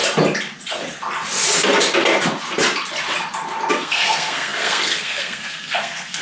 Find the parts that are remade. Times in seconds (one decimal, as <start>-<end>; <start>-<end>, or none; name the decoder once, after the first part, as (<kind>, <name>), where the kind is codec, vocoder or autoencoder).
3.7-6.2 (codec, SNAC)